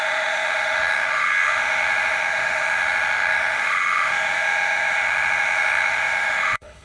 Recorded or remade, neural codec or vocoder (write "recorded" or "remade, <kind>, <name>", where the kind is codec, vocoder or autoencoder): remade, autoencoder, DAC-VAE